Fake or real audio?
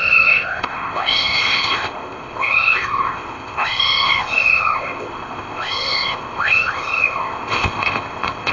fake